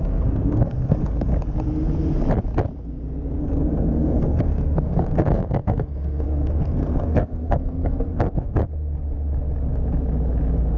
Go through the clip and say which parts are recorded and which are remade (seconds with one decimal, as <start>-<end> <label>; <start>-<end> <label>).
0.0-1.3 remade; 1.3-3.4 recorded; 3.4-8.6 remade; 8.6-10.8 recorded